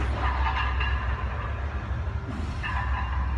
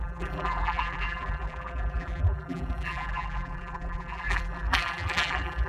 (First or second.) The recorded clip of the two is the first